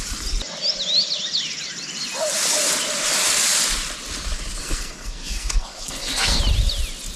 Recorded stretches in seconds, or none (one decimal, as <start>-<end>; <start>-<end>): 0.0-4.6; 6.4-7.2